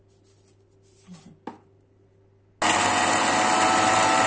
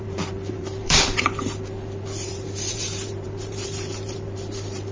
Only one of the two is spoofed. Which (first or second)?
second